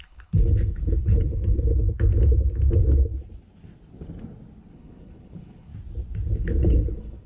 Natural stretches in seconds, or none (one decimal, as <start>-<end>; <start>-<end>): 1.7-4.7; 5.7-6.4